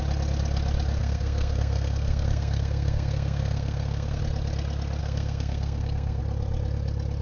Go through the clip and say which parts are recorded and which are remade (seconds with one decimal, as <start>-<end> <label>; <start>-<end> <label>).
0.0-1.0 recorded; 1.0-4.2 remade; 4.2-5.0 recorded; 5.0-6.2 remade; 6.2-7.2 recorded